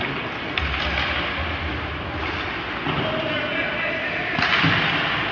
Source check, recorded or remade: recorded